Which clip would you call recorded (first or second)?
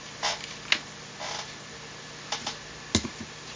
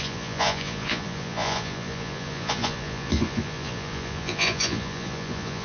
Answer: first